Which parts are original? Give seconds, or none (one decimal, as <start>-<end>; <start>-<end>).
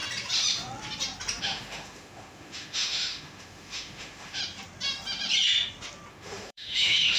0.0-1.4; 4.4-6.1